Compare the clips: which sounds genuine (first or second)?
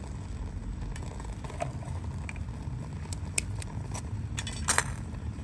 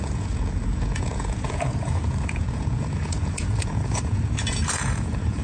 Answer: first